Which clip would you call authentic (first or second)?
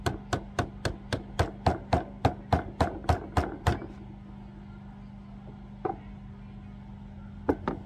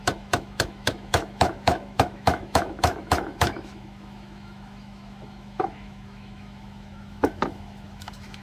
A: first